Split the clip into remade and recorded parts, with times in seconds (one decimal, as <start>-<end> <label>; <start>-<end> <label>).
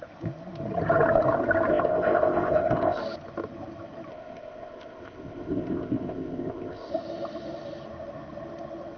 0.0-1.7 recorded; 1.7-3.0 remade; 3.0-4.1 recorded; 4.1-6.9 remade; 6.9-9.0 recorded